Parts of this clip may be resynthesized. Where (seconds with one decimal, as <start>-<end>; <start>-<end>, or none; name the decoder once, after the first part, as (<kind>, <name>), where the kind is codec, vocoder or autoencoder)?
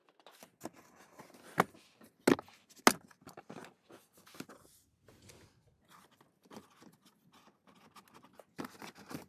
none